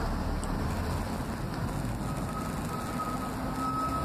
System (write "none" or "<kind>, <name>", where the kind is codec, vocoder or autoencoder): none